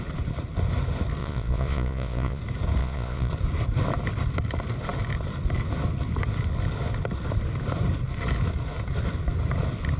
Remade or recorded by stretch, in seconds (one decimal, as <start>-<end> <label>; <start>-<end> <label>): 0.0-1.2 recorded; 1.2-2.4 remade; 2.4-2.8 recorded; 2.8-3.3 remade; 3.3-10.0 recorded